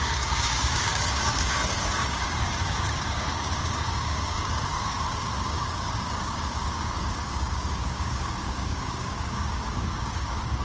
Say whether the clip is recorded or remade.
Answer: remade